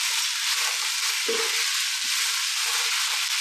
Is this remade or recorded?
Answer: recorded